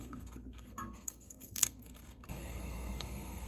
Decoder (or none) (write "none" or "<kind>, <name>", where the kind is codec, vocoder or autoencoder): codec, SNAC